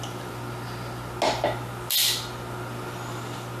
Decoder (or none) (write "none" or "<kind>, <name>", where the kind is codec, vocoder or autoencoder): none